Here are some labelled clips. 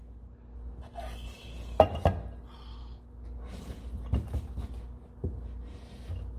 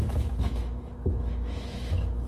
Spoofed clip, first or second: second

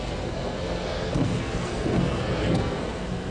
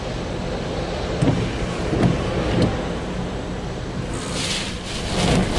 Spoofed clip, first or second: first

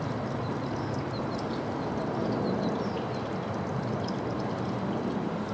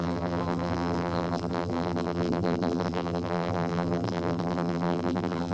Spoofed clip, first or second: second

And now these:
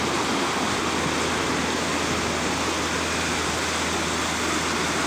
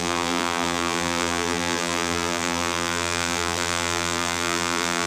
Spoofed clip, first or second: second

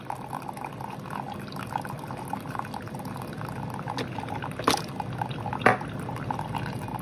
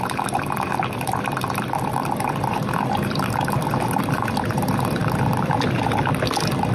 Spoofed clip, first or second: second